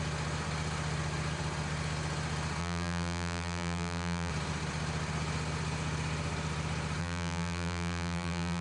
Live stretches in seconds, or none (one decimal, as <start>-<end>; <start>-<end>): 0.0-2.6; 4.3-7.0